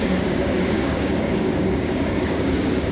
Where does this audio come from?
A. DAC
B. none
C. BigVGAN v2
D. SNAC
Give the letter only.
A